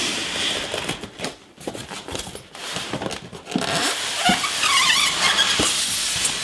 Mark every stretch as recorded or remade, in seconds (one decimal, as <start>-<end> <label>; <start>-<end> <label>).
0.0-6.4 recorded